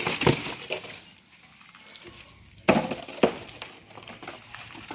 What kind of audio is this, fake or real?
real